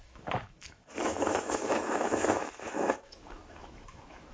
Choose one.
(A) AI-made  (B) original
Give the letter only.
A